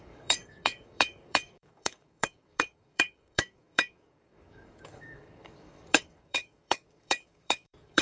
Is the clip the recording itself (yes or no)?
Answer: no